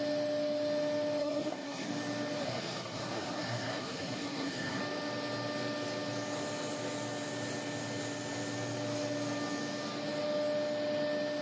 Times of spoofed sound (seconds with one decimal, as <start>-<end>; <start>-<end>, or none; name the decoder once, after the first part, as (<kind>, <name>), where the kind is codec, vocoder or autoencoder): 1.2-1.9 (codec, SNAC); 2.4-4.8